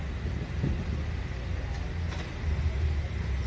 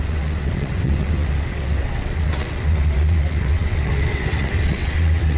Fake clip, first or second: second